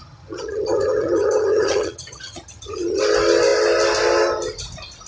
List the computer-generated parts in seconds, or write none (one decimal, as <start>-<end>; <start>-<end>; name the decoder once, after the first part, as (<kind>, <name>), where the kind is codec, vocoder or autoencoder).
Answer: 0.0-3.0 (vocoder, HiFi-GAN)